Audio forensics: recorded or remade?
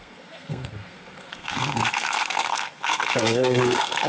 remade